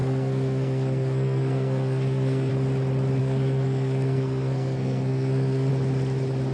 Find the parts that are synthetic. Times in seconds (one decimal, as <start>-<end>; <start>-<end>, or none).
0.0-2.5; 3.2-5.7